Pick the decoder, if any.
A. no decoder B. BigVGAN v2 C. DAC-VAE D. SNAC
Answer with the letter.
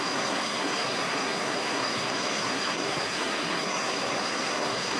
D